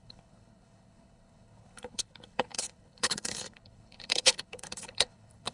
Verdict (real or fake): fake